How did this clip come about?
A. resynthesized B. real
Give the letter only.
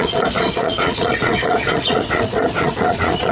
A